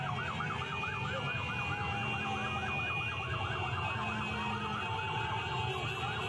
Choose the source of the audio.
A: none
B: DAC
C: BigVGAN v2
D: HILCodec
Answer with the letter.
A